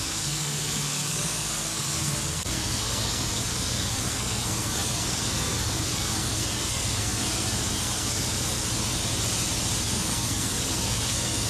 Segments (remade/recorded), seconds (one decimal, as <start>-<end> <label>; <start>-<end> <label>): 0.0-8.7 remade; 8.7-9.8 recorded; 9.8-11.5 remade